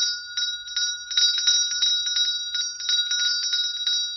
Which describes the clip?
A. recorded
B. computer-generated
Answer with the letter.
A